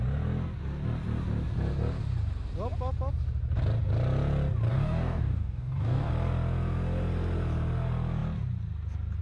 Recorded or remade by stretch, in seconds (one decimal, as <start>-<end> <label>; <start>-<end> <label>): 0.0-4.7 recorded; 4.7-6.1 remade; 6.1-9.2 recorded